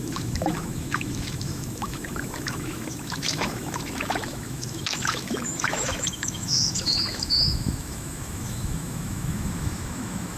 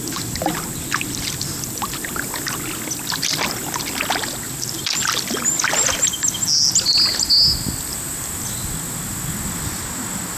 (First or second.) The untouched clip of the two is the second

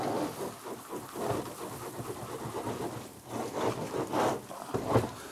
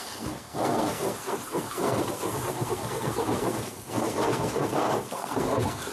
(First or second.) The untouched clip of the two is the first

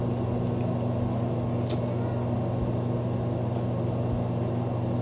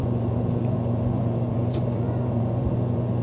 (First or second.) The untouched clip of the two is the first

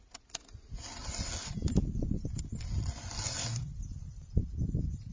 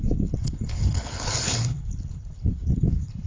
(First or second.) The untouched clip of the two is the first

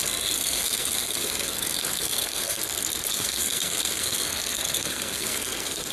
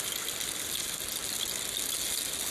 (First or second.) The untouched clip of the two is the second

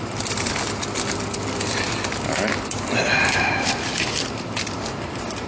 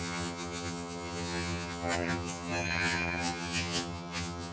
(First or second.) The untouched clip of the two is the first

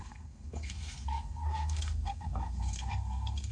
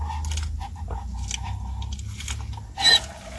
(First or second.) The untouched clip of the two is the second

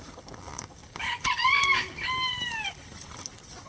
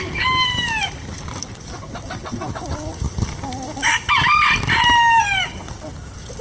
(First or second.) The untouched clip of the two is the second